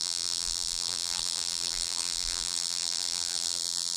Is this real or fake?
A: fake